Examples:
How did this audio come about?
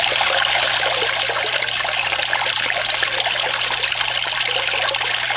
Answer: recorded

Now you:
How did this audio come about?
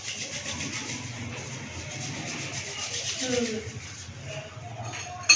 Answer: recorded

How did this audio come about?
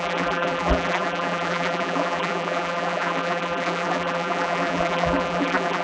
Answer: remade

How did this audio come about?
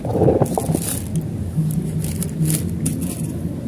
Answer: recorded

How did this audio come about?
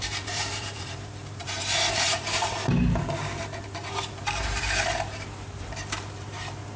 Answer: remade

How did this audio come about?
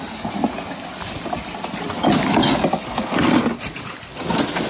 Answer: recorded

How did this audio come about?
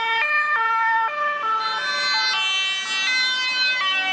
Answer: recorded